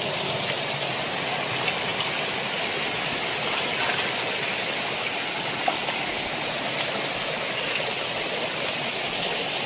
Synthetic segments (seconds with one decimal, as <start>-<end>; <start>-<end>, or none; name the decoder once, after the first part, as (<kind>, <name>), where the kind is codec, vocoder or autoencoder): none